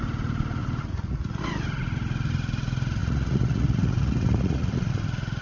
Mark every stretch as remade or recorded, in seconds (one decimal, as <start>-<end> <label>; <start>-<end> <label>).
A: 0.0-0.6 recorded; 0.6-1.4 remade; 1.4-3.0 recorded; 3.0-4.9 remade; 4.9-5.4 recorded

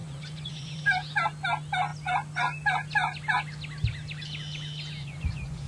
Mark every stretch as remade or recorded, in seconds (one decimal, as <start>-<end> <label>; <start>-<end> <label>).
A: 0.0-0.8 remade; 0.8-5.0 recorded; 5.0-5.7 remade

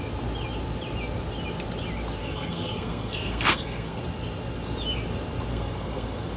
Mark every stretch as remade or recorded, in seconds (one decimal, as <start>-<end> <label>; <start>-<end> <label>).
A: 0.0-2.2 recorded; 2.2-4.0 remade; 4.0-5.5 recorded; 5.5-6.4 remade

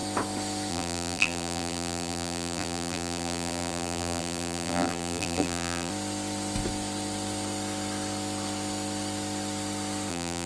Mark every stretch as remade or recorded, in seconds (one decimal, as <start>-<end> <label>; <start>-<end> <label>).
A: 0.0-0.7 recorded; 0.7-5.9 remade; 5.9-10.1 recorded; 10.1-10.5 remade

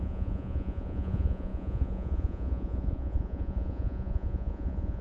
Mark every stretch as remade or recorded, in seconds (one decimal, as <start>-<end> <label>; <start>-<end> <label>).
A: 0.0-5.0 remade